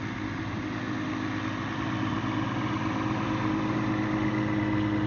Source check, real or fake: real